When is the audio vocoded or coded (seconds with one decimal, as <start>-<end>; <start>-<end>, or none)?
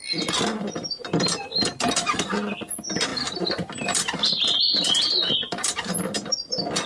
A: none